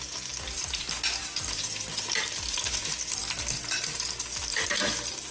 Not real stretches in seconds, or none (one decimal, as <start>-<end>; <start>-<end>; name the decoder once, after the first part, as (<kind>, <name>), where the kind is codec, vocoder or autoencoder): none